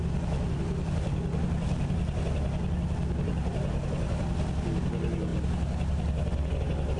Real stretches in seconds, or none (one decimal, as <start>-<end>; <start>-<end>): 0.0-7.0